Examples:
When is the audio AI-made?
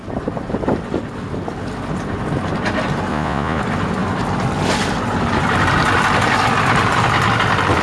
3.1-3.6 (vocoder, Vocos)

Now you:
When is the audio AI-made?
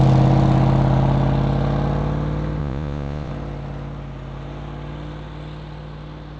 2.6-3.3 (vocoder, Vocos)